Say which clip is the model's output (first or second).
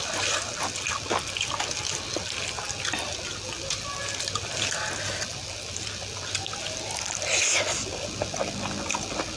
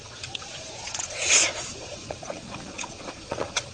second